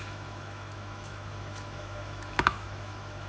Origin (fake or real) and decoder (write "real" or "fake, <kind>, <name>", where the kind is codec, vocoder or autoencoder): fake, autoencoder, DAC-VAE